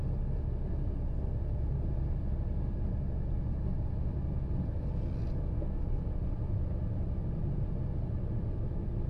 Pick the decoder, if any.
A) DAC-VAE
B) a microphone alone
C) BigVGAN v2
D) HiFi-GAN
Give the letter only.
B